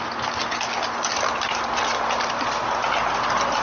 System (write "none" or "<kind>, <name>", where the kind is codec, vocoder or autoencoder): none